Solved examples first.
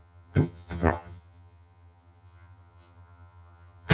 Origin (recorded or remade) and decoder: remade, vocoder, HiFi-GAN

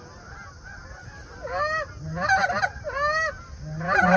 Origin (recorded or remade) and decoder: recorded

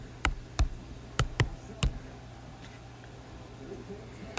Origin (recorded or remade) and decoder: recorded